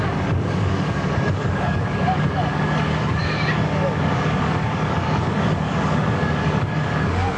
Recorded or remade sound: remade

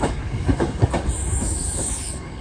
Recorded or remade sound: remade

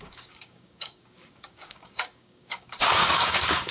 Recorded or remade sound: remade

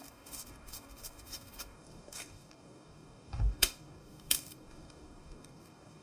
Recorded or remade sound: remade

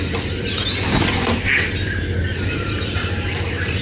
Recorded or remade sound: recorded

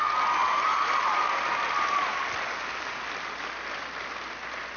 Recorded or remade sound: recorded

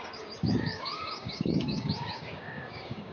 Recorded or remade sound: remade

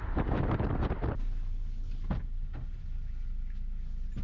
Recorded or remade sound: recorded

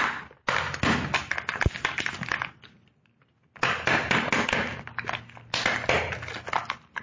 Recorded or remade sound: recorded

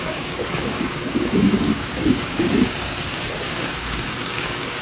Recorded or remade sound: remade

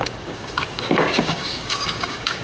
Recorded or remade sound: remade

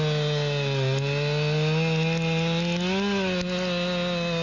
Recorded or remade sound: recorded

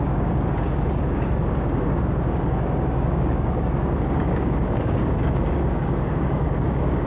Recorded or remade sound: remade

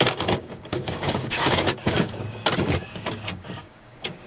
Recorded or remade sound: remade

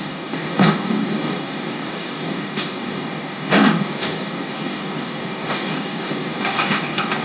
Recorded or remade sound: remade